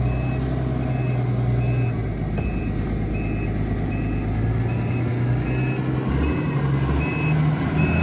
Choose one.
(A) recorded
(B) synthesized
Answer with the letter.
A